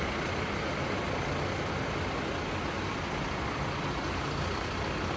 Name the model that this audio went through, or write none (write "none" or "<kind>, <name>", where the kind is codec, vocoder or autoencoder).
none